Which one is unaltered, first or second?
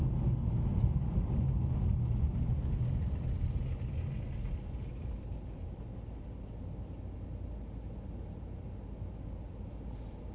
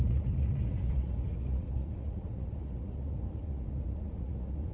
first